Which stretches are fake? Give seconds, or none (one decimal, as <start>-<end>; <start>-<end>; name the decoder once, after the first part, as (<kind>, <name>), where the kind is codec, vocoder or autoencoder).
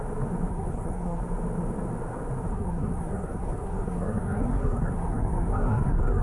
0.5-1.2 (codec, SNAC); 2.5-6.2